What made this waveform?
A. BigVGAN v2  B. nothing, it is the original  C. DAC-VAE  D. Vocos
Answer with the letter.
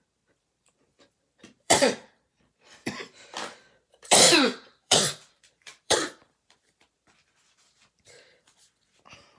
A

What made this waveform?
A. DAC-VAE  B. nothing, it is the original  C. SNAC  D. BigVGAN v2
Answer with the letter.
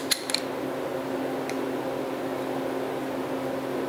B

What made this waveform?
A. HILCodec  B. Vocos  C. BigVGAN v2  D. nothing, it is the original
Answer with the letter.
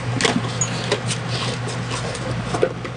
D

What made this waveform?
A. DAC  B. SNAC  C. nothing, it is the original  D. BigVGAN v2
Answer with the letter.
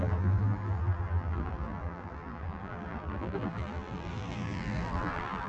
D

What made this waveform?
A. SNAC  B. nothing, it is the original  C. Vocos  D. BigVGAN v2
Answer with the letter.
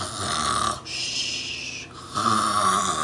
B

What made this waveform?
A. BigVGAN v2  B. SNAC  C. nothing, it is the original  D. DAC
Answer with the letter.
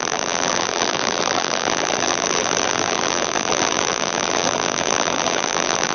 A